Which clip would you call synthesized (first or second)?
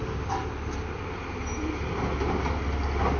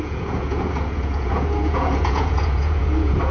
second